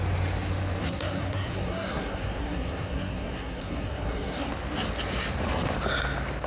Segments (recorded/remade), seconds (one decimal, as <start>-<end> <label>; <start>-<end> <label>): 0.0-0.8 recorded; 0.8-4.5 remade; 4.5-6.5 recorded